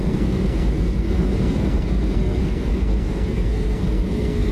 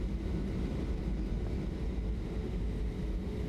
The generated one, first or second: first